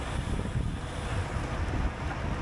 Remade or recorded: recorded